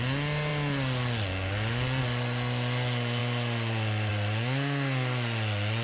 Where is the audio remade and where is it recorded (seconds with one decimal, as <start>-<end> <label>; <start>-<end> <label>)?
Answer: 0.0-5.8 recorded